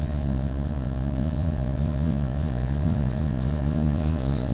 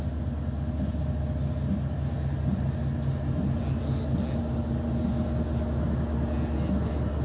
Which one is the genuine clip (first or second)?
second